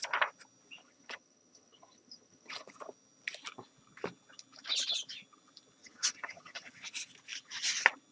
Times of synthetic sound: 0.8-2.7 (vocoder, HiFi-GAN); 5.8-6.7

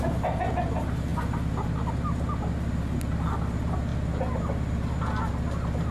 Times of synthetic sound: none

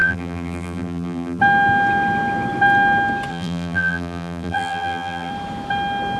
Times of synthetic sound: 0.0-1.4 (vocoder, BigVGAN v2); 3.3-5.3

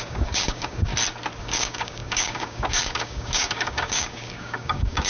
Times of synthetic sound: 0.0-0.9 (codec, DAC); 1.4-5.1